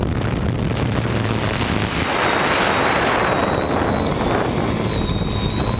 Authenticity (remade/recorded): recorded